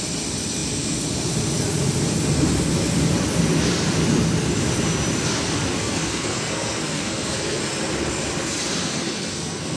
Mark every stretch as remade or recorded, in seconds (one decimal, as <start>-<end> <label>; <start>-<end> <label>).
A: 0.0-5.8 recorded; 5.8-7.6 remade; 7.6-8.8 recorded; 8.8-9.8 remade